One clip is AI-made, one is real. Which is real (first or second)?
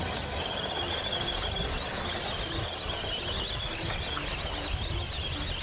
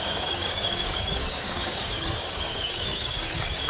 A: first